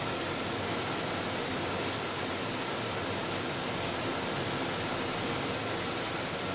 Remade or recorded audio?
recorded